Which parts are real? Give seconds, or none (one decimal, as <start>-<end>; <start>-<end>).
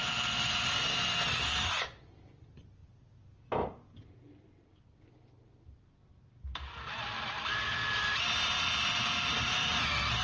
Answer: 0.0-10.2